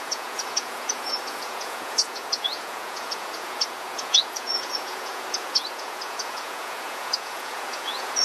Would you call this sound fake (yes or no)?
yes